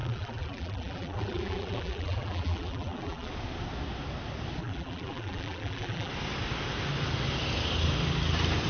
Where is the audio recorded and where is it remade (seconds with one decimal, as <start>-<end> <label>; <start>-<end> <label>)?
0.0-3.3 remade; 3.3-4.6 recorded; 4.6-6.1 remade; 6.1-8.7 recorded